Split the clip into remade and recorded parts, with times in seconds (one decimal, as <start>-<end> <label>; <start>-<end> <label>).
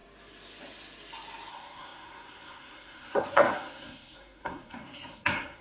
0.0-1.5 recorded; 1.5-5.6 remade